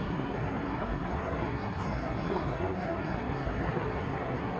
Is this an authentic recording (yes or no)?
no